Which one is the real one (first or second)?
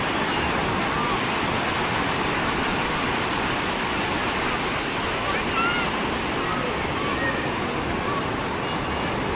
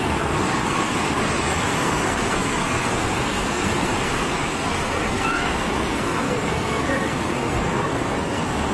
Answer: first